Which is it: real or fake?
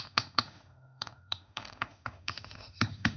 fake